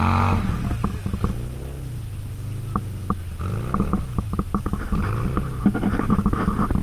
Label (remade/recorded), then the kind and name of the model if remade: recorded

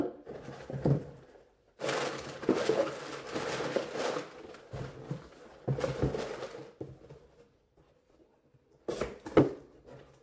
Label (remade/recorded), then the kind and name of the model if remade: recorded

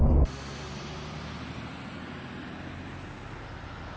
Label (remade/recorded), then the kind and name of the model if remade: recorded